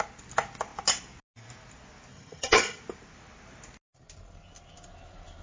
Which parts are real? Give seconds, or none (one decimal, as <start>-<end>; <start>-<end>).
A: 0.0-2.1; 2.8-5.4